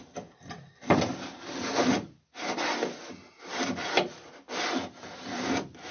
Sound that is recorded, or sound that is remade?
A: recorded